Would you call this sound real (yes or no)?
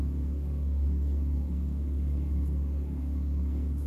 no